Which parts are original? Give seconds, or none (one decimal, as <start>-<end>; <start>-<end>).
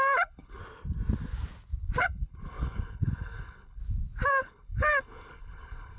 0.6-2.0; 3.8-4.3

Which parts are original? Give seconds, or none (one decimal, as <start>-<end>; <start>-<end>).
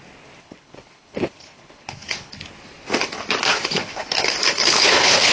0.0-0.4; 2.4-3.5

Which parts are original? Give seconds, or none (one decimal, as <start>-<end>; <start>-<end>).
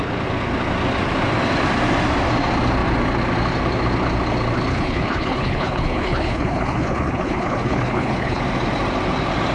0.0-4.7; 8.4-9.5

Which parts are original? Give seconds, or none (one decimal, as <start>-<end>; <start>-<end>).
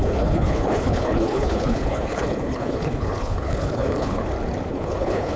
4.2-4.7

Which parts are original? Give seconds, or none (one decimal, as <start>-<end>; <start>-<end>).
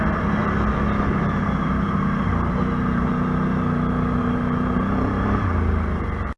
0.0-6.4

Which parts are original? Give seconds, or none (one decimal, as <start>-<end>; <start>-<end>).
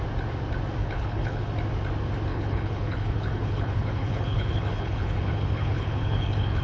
0.0-0.8; 1.5-2.3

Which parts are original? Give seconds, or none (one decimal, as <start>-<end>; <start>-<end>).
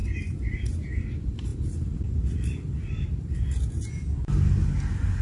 0.0-5.2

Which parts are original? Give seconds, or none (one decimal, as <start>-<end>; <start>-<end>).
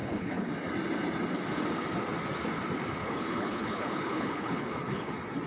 0.5-3.0; 5.1-5.5